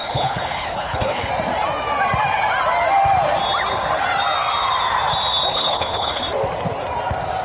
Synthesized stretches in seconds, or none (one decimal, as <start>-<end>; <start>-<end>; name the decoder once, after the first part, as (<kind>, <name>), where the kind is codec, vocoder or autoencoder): 0.0-1.3 (codec, HILCodec); 5.5-6.2